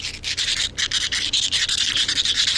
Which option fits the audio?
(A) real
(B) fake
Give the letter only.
A